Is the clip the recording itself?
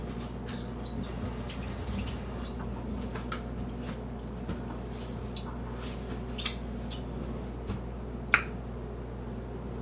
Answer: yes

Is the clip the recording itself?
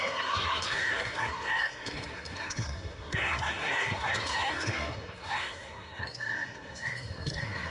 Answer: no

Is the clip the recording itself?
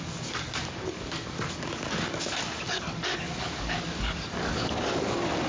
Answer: no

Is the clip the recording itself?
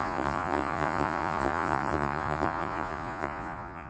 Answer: no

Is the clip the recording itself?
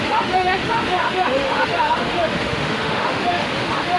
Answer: no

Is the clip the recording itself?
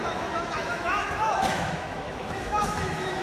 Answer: no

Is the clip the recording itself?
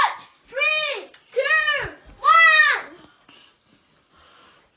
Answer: yes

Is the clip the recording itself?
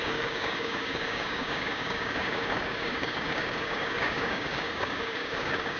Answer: no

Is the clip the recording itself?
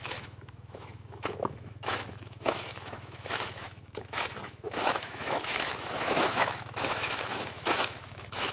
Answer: no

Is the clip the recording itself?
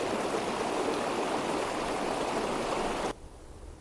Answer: yes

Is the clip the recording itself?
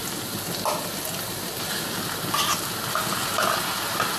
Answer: yes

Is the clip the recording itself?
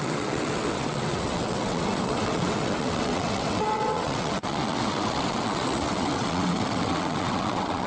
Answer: no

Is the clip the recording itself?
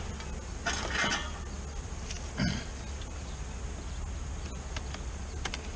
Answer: yes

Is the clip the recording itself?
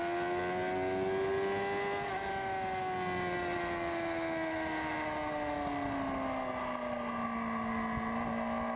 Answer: yes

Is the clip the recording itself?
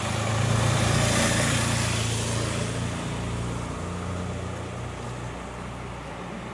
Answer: yes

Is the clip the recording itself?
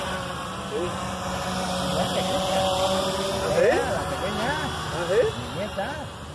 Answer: yes